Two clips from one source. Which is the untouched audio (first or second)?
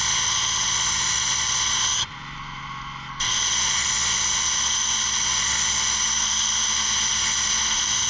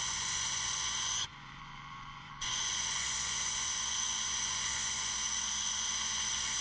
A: first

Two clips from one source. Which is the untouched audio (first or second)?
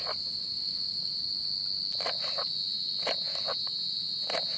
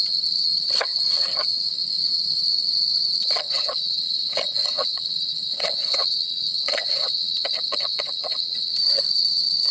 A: first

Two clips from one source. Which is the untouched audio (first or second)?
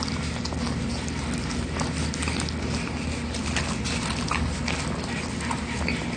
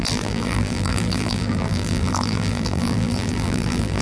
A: first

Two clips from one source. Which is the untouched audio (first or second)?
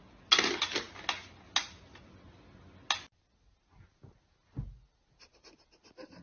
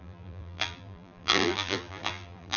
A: first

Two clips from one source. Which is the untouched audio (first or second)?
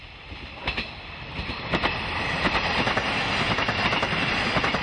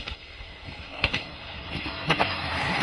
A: first